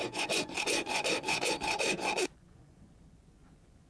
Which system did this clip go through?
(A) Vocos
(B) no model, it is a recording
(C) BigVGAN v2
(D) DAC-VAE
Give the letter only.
A